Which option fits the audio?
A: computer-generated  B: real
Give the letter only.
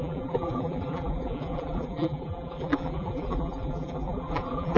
A